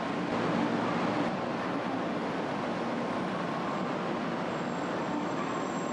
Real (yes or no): yes